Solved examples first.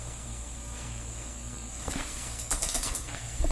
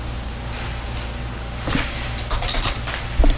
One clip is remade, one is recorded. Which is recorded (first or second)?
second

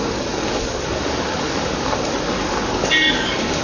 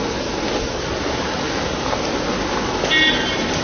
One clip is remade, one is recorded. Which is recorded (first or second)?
second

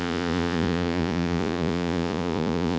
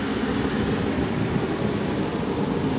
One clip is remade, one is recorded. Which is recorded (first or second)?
second